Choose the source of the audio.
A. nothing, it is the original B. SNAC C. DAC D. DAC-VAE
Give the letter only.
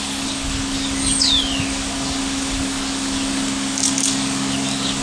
C